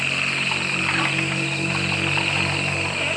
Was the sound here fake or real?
real